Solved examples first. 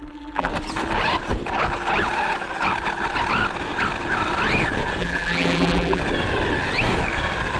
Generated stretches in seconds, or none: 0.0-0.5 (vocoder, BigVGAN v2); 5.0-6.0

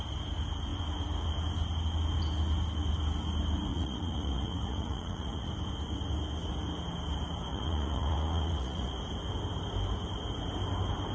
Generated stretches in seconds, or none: 3.7-5.5 (vocoder, Vocos); 7.5-8.9

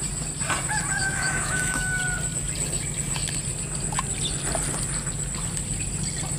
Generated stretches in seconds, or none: 1.0-2.0 (autoencoder, DAC-VAE)

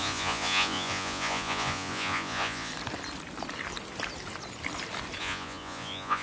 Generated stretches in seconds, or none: 0.0-2.7 (vocoder, Vocos); 5.2-6.2

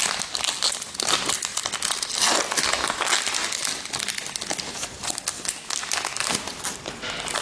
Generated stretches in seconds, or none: none

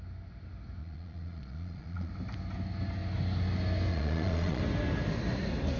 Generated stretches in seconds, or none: 0.8-2.1 (vocoder, Vocos); 3.9-4.6